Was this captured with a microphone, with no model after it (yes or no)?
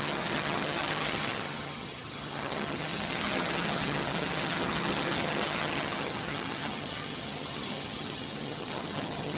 no